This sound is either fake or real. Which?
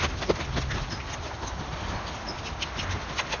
real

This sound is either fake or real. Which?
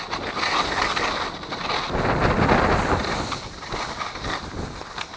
real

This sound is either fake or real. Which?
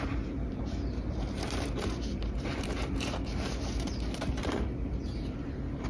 fake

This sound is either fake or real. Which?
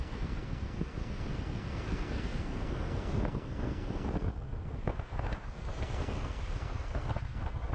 fake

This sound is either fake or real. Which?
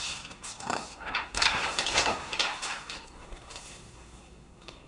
fake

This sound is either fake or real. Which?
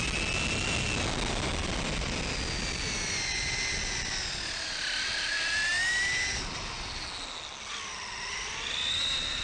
real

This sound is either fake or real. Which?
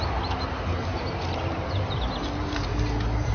real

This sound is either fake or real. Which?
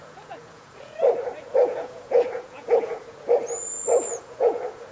fake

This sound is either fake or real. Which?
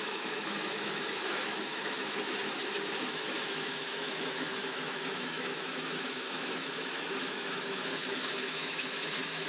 fake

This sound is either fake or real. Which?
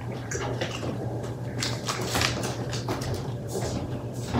fake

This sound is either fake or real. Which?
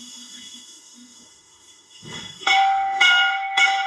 fake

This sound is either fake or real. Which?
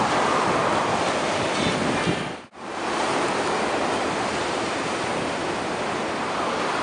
real